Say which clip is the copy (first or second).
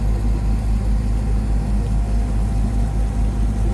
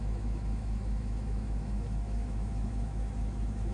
second